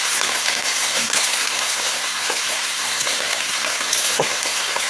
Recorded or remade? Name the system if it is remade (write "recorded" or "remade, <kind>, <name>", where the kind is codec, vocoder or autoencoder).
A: remade, codec, SNAC